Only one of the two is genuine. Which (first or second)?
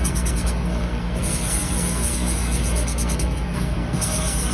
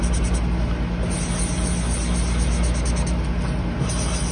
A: second